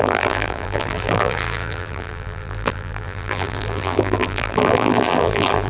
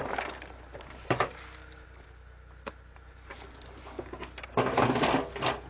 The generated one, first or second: first